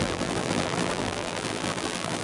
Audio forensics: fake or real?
fake